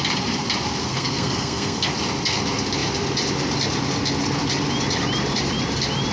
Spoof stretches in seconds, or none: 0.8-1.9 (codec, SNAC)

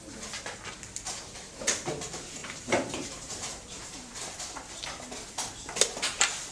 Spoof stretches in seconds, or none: 2.4-4.1 (vocoder, BigVGAN v2)

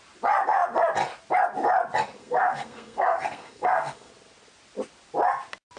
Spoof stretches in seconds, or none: 2.2-4.1 (codec, SNAC)

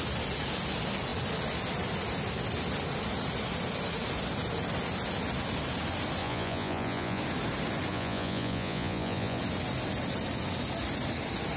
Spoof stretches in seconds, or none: 6.2-7.2 (vocoder, Vocos); 7.9-9.4

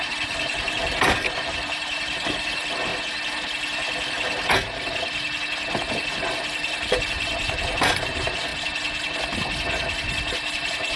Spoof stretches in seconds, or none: 0.0-2.9 (vocoder, BigVGAN v2); 5.9-8.5